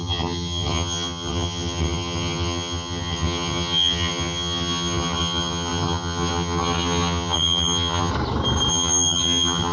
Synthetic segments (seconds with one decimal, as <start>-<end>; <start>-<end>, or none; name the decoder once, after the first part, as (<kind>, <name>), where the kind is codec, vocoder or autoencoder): 0.0-8.1 (vocoder, HiFi-GAN); 8.7-9.7